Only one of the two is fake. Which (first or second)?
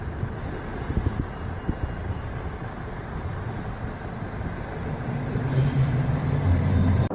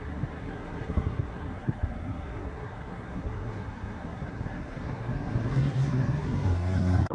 second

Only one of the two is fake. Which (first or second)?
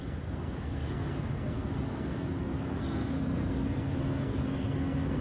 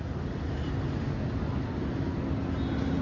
first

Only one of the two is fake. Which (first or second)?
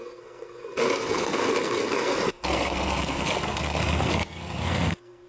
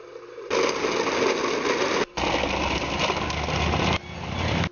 first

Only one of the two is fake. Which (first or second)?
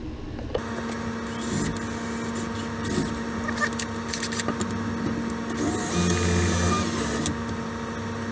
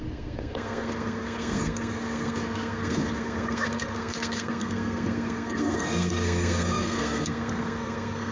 second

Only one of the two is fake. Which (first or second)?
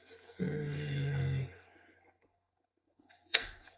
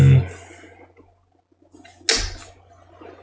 first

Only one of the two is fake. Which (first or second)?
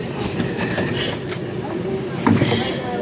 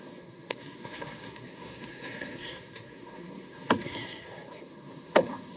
second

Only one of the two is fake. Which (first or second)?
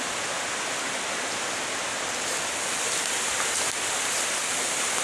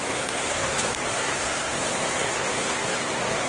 second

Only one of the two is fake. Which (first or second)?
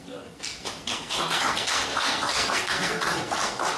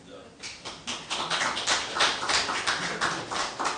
first